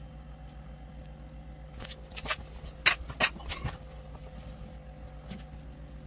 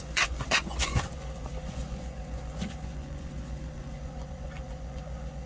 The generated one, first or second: second